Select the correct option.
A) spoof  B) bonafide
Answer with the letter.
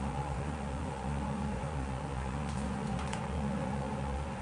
A